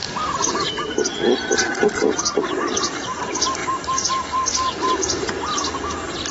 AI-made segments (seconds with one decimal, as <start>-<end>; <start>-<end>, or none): 0.0-0.5; 3.6-5.2